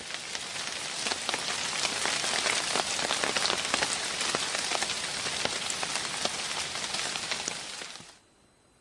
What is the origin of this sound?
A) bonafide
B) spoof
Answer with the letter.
A